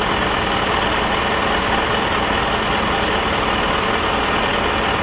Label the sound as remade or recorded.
recorded